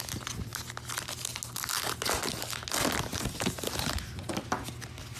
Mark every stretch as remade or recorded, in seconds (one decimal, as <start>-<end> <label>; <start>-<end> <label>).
0.0-3.1 recorded; 3.1-4.3 remade; 4.3-5.2 recorded